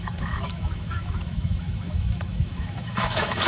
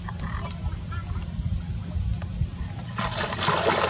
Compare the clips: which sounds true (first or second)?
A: second